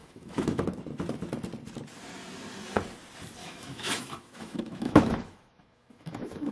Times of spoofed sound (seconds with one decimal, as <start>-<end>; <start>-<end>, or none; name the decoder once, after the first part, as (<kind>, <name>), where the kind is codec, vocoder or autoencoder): 0.0-0.6 (autoencoder, DAC-VAE); 3.4-6.5

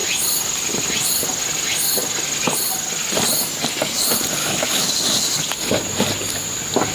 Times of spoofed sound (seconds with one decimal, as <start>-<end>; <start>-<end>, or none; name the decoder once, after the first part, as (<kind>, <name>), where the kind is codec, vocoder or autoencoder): 4.4-4.9 (autoencoder, DAC-VAE)

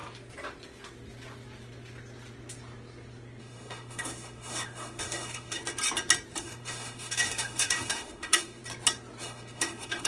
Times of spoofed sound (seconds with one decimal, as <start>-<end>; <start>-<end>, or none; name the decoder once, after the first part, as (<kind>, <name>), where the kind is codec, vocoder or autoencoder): 3.4-5.6 (autoencoder, DAC-VAE); 6.4-8.6; 9.2-10.1

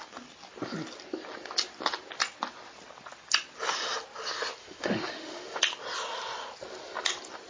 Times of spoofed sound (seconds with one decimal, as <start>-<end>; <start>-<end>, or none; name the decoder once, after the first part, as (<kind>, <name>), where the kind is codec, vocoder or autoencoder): 4.6-5.6 (autoencoder, DAC-VAE)

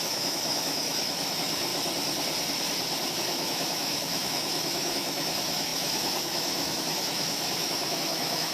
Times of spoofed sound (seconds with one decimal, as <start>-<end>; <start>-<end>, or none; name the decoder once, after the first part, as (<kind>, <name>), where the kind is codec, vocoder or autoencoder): 0.0-1.7 (autoencoder, DAC-VAE); 3.1-8.5